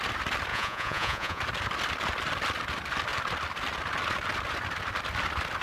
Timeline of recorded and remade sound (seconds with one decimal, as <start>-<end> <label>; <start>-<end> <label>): 0.0-0.5 recorded; 0.5-1.4 remade; 1.4-5.6 recorded